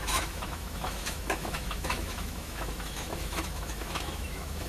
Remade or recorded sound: remade